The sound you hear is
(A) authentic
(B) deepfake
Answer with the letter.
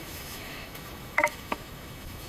B